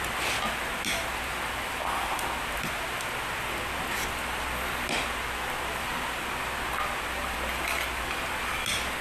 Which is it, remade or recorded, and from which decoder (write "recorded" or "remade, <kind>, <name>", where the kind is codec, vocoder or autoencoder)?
recorded